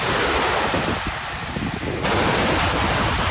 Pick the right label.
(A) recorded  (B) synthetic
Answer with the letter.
A